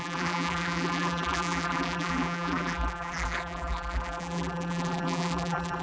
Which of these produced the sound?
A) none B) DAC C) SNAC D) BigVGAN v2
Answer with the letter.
D